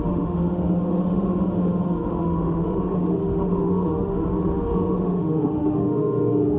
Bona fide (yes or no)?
no